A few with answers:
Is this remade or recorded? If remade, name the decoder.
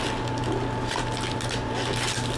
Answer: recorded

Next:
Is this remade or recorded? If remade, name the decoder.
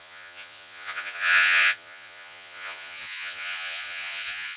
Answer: remade, vocoder, Vocos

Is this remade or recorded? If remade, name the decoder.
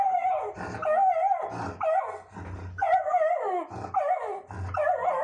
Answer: recorded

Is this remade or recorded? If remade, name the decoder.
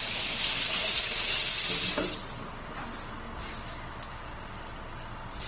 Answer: recorded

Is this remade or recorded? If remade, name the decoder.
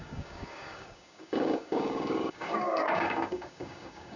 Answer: remade, codec, DAC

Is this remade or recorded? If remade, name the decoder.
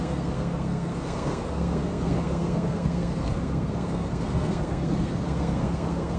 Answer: remade, codec, SNAC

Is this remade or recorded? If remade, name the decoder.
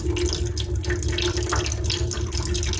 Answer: recorded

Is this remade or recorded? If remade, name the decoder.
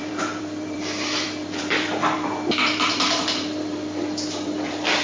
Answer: remade, vocoder, BigVGAN v2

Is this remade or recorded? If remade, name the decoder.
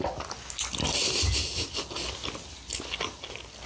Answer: recorded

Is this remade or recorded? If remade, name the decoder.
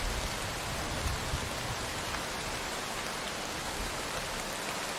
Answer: recorded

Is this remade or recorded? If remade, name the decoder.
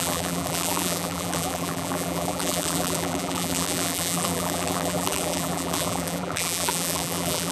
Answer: remade, vocoder, BigVGAN v2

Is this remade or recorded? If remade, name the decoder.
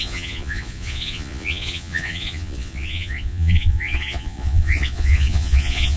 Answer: remade, vocoder, Vocos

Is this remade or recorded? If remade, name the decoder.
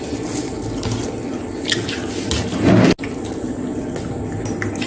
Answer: recorded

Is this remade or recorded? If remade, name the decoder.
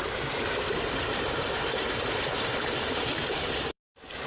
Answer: remade, vocoder, BigVGAN v2